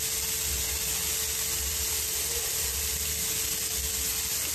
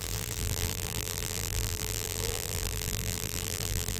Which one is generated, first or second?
second